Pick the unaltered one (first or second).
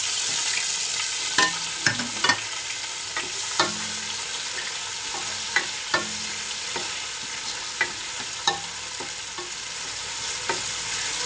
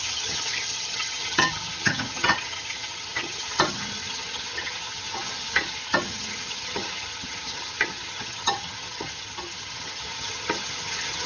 first